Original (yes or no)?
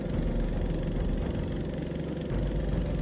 yes